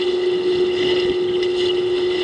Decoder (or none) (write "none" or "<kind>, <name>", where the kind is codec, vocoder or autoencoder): none